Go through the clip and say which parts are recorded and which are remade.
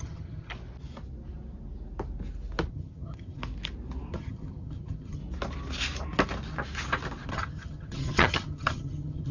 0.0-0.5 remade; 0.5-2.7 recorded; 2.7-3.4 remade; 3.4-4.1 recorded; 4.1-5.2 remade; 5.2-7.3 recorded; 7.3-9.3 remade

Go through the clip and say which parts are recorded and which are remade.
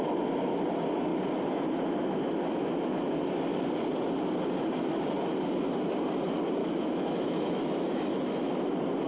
0.0-6.6 recorded; 6.6-8.6 remade; 8.6-9.1 recorded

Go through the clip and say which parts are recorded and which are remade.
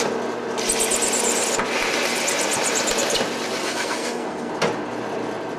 0.0-3.6 recorded; 3.6-4.5 remade; 4.5-5.6 recorded